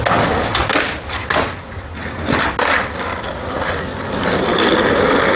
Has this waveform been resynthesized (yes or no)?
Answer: no